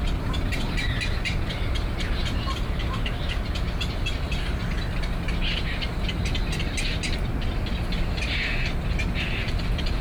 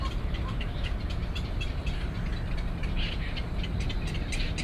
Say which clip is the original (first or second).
first